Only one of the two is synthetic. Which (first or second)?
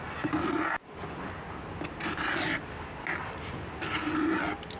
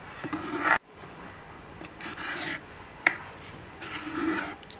second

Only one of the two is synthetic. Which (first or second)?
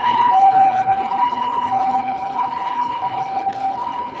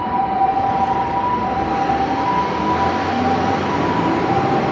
first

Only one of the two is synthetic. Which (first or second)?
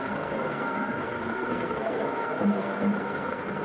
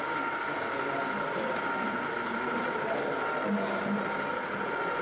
first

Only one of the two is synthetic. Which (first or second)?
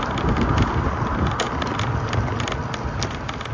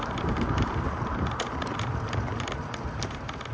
second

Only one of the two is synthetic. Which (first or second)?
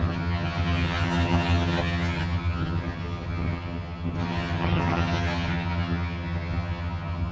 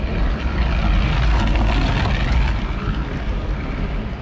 first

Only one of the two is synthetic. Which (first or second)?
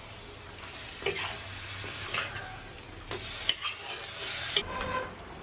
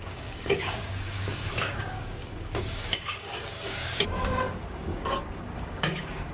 second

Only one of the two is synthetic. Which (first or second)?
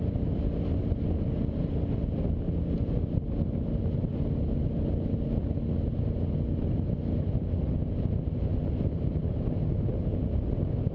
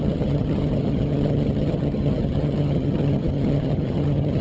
second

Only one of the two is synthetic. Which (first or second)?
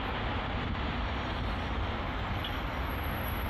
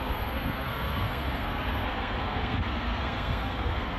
second